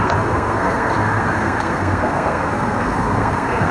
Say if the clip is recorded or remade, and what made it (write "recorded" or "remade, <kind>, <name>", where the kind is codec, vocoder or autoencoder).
remade, codec, SNAC